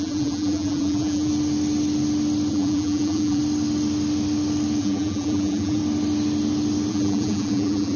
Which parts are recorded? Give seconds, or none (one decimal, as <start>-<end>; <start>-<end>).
1.3-2.5; 3.4-4.8; 5.8-6.9